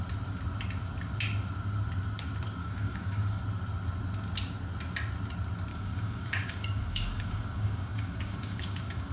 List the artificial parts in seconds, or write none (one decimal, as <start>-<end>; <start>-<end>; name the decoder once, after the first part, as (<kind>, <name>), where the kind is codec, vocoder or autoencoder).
2.6-3.4 (codec, DAC); 5.7-9.1